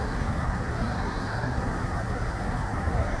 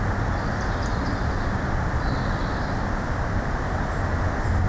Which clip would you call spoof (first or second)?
first